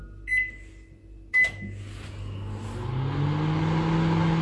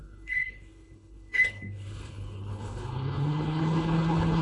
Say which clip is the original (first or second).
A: first